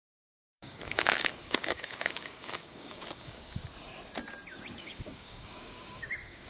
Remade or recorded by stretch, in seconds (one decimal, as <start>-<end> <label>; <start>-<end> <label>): 0.0-3.6 remade; 3.6-4.8 recorded; 4.8-6.5 remade

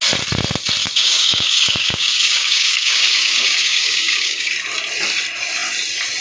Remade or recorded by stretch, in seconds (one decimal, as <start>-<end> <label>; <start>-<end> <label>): 0.0-0.8 recorded; 0.8-4.5 remade; 4.5-6.2 recorded

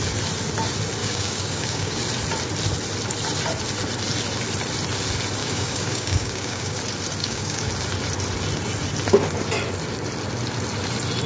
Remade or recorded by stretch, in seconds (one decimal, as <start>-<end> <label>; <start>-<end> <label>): 0.0-1.0 recorded; 1.0-2.0 remade; 2.0-5.4 recorded; 5.4-6.8 remade; 6.8-7.2 recorded; 7.2-7.7 remade; 7.7-11.3 recorded

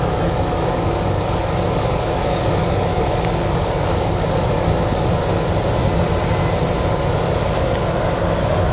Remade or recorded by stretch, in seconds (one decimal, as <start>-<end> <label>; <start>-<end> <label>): 0.0-5.2 remade; 5.2-6.9 recorded; 6.9-8.7 remade

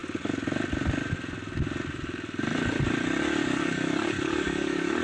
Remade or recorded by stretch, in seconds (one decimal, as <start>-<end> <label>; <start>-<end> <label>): 0.0-3.4 recorded; 3.4-5.0 remade

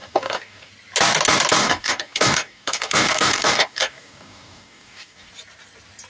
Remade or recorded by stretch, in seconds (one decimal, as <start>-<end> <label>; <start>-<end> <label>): 0.0-0.7 remade; 0.7-1.6 recorded; 1.6-5.3 remade; 5.3-6.1 recorded

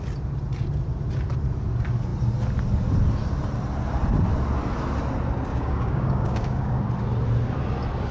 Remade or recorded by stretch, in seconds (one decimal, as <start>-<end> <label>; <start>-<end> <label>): 0.0-5.5 recorded; 5.5-6.8 remade; 6.8-8.1 recorded

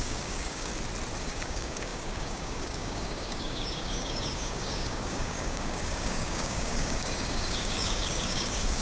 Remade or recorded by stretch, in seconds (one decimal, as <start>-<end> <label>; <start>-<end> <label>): 0.0-0.7 remade; 0.7-1.2 recorded; 1.2-8.8 remade